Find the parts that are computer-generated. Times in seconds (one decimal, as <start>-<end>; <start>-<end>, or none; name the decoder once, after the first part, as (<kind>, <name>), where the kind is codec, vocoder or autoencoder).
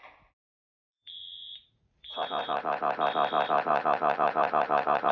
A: 0.7-2.6 (vocoder, Vocos); 3.7-5.1